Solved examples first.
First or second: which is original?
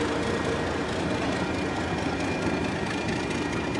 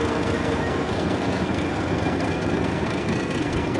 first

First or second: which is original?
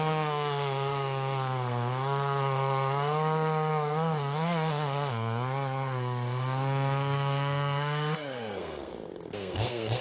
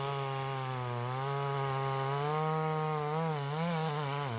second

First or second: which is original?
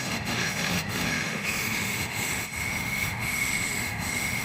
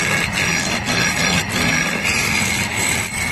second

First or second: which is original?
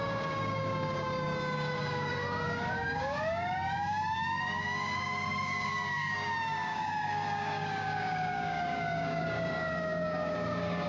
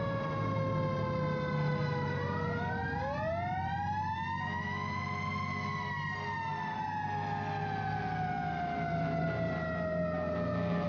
second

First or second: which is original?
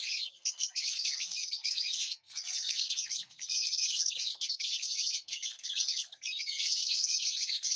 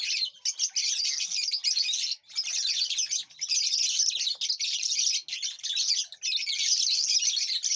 second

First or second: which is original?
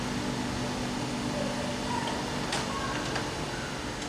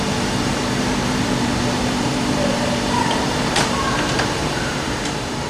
first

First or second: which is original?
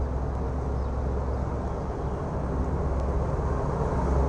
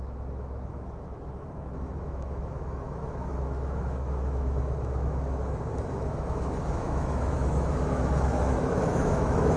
first